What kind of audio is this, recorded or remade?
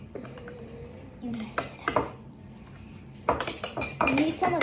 remade